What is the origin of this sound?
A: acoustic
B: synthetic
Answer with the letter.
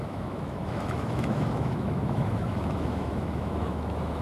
B